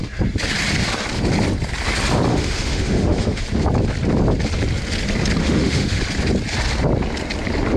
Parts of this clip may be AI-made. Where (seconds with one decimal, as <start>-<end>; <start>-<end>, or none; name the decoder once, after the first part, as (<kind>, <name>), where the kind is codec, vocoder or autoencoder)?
2.3-3.4 (autoencoder, DAC-VAE); 5.4-6.0